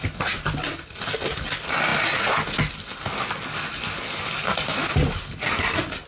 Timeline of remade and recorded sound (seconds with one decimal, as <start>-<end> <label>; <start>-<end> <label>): 0.0-6.1 recorded